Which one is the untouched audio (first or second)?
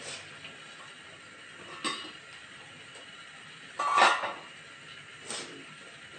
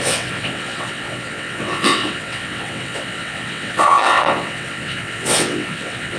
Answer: first